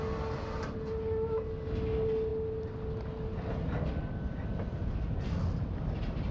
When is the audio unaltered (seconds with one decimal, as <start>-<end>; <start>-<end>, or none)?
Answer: 0.0-6.3